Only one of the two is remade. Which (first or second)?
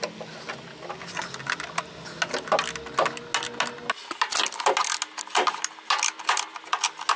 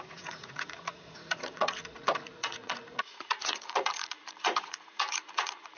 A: second